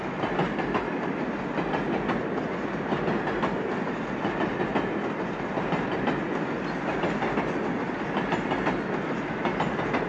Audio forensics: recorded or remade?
recorded